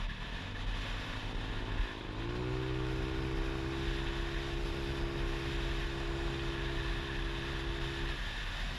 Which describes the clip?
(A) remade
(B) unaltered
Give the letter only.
B